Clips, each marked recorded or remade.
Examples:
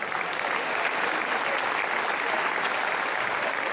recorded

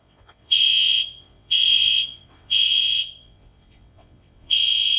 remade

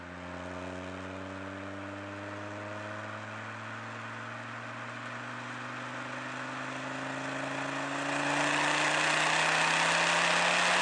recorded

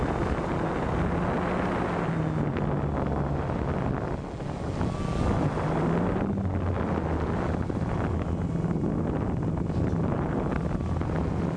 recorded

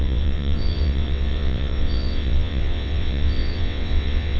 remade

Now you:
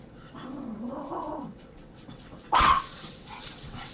remade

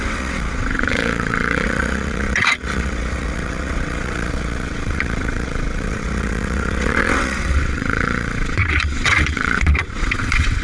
remade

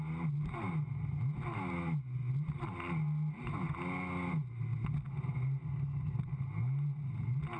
recorded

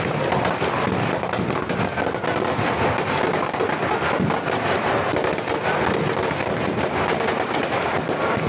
recorded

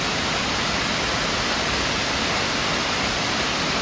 recorded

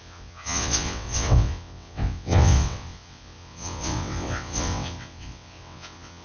remade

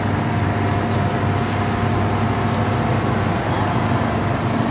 recorded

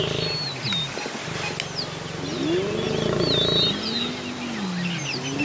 recorded